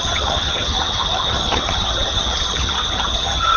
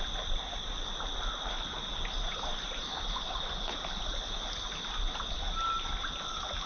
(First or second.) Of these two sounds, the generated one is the first